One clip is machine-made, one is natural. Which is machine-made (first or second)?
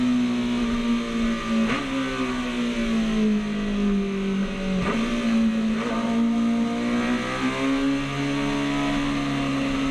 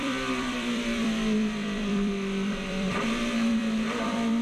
second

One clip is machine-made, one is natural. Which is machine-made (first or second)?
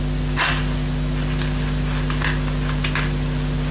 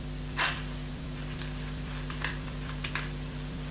second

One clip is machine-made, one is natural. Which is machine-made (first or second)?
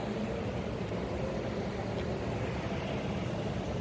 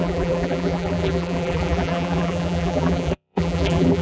second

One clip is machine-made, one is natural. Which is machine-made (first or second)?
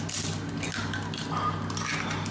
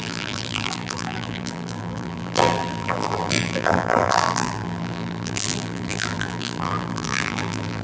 second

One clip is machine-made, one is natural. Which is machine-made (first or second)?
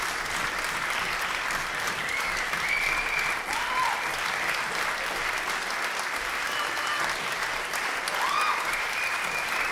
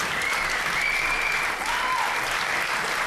first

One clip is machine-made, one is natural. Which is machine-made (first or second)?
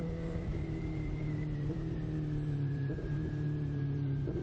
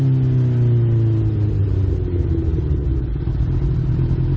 first